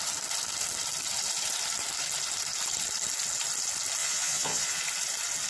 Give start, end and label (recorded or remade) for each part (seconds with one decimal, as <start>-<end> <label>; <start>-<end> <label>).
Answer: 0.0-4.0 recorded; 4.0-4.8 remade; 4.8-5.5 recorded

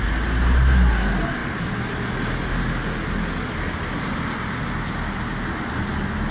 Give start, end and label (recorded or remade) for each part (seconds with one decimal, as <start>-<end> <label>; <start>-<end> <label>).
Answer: 0.0-6.3 recorded

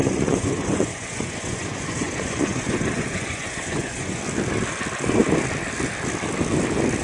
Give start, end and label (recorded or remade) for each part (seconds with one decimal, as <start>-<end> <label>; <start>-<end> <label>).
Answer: 0.0-4.2 remade; 4.2-7.0 recorded

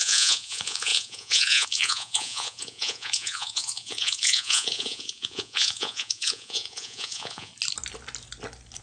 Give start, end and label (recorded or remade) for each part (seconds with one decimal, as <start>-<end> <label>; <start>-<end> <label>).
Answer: 0.0-7.5 remade; 7.5-8.8 recorded

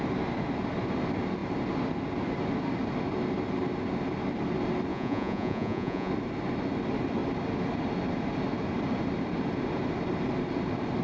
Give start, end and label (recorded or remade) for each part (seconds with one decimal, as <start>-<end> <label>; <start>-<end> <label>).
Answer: 0.0-4.9 recorded; 4.9-6.1 remade; 6.1-11.0 recorded